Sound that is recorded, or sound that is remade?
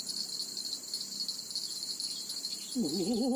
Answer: recorded